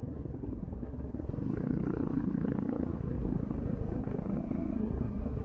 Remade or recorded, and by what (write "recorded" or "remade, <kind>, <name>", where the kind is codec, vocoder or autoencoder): remade, codec, SNAC